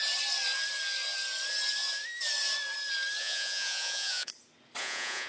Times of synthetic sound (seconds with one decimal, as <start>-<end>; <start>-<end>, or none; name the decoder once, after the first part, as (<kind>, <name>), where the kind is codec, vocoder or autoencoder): 3.2-4.3 (vocoder, Vocos); 4.8-5.3